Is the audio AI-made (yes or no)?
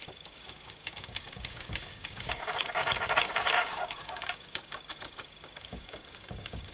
yes